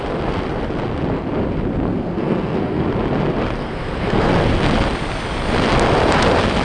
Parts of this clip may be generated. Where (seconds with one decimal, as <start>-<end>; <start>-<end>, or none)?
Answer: 1.9-2.8; 3.6-4.3